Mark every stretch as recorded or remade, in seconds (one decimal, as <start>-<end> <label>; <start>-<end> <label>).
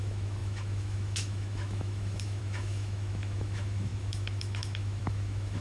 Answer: 0.0-5.6 remade